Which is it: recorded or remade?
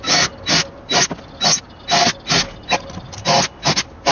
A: recorded